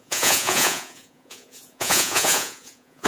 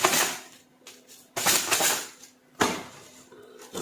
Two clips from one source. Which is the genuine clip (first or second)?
second